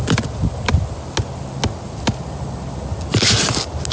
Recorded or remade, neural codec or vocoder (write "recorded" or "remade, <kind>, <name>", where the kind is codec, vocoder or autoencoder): recorded